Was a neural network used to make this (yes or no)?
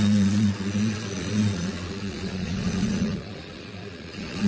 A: yes